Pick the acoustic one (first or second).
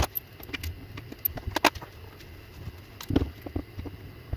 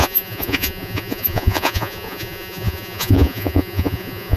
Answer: first